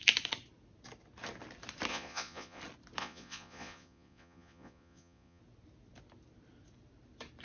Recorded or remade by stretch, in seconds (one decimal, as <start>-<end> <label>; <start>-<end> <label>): 0.0-1.9 recorded; 1.9-2.6 remade; 2.6-3.0 recorded; 3.0-5.4 remade; 5.4-7.4 recorded